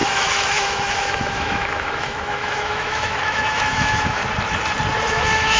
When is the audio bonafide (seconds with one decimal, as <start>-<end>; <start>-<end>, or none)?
4.2-5.1